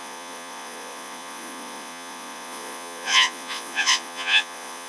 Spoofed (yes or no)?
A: yes